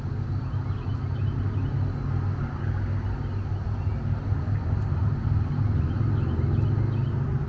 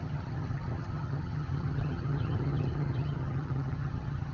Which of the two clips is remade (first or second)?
second